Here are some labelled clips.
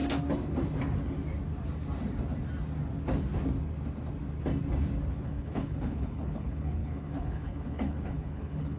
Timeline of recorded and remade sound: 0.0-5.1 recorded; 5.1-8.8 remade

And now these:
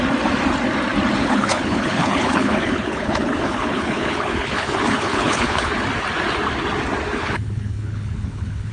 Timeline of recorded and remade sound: 0.0-1.2 recorded; 1.2-5.7 remade; 5.7-7.2 recorded; 7.2-8.7 remade